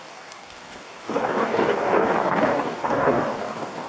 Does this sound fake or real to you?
fake